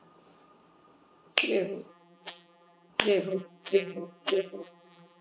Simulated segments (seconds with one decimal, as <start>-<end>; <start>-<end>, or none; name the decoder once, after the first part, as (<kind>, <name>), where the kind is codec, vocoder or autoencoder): 1.9-2.9 (vocoder, BigVGAN v2); 3.3-5.2